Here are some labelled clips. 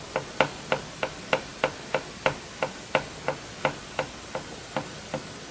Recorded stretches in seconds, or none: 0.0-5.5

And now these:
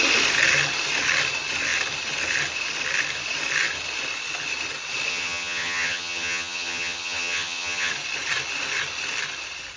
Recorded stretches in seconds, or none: 0.0-5.1; 7.9-9.8

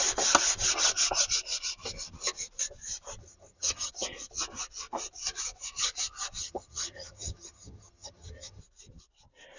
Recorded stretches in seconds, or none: 0.0-3.2; 3.9-6.4; 8.6-9.6